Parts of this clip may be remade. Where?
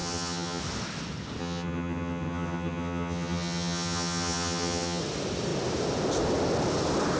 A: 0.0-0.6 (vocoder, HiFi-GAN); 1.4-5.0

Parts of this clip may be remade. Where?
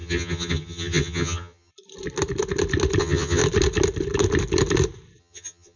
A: 0.0-1.7 (vocoder, HiFi-GAN); 3.0-3.4; 5.2-5.8